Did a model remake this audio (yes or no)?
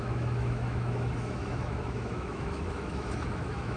yes